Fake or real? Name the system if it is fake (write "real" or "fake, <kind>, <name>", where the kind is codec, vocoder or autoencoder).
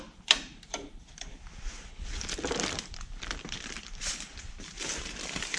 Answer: fake, vocoder, BigVGAN v2